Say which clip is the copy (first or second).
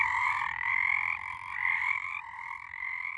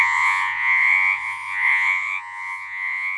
second